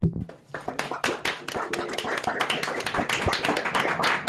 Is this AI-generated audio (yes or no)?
no